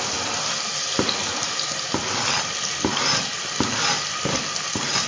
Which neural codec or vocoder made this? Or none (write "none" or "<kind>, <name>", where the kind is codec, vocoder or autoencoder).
none